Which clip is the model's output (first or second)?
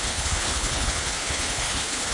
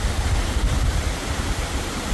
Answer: first